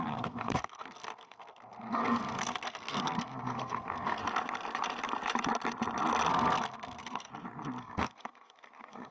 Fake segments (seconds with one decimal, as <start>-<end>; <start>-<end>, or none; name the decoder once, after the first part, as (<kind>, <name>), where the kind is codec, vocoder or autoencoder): 0.0-4.2 (codec, SNAC); 6.3-7.3; 7.8-9.1